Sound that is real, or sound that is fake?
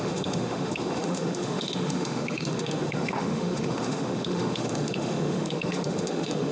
fake